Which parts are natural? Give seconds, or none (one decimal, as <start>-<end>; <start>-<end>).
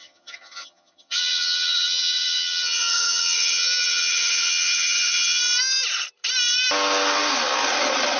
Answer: 5.4-8.2